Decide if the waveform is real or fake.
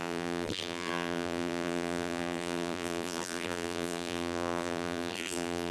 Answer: fake